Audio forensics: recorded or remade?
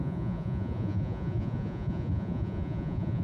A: remade